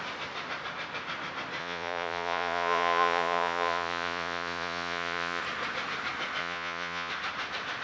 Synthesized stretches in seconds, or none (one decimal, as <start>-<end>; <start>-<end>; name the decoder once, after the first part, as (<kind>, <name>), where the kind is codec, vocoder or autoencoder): 1.6-5.4 (vocoder, Vocos); 6.4-7.1